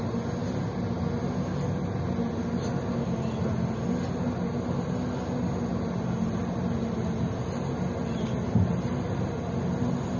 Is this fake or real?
real